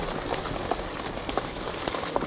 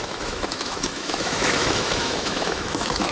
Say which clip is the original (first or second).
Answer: first